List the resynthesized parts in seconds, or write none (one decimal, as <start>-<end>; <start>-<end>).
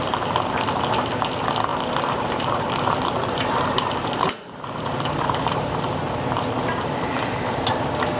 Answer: 1.7-5.8